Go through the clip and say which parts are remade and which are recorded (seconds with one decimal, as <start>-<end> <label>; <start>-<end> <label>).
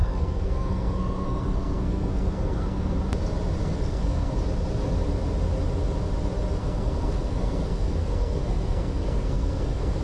0.0-3.0 remade; 3.0-3.6 recorded; 3.6-4.3 remade; 4.3-6.6 recorded; 6.6-10.0 remade